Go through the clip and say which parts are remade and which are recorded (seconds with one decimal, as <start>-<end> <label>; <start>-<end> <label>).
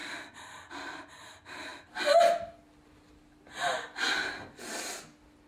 0.0-5.5 recorded